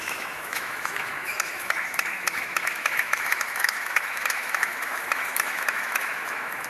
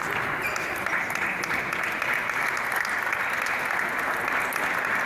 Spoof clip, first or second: first